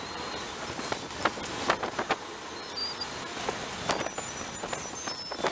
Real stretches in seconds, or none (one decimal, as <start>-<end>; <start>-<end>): 0.0-5.5